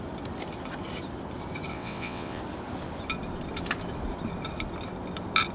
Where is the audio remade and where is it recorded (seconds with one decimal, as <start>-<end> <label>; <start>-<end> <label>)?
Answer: 0.0-1.7 recorded; 1.7-2.4 remade; 2.4-5.5 recorded